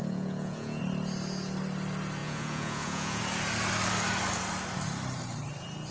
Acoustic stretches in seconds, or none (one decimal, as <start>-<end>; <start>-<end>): 0.8-2.2; 3.2-5.9